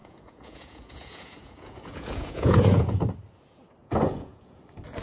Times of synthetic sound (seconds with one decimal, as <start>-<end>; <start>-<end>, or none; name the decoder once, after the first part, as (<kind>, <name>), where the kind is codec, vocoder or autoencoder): 0.0-3.0 (vocoder, Vocos); 3.8-4.6